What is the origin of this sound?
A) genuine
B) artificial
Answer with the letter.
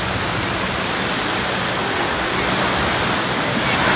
A